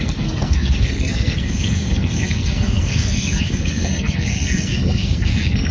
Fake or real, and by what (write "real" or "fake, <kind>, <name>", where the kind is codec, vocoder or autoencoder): fake, codec, SNAC